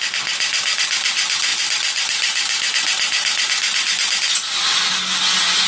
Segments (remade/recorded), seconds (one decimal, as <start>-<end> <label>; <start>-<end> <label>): 0.0-5.7 recorded